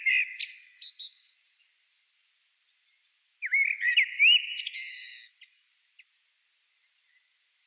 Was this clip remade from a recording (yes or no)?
yes